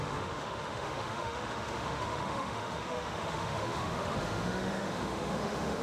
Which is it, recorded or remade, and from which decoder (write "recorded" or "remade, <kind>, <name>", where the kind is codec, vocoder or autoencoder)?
remade, autoencoder, DAC-VAE